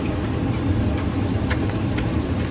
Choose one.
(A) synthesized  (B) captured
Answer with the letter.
B